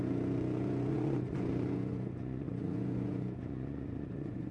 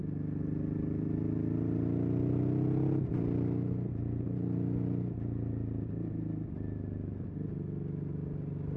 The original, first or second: second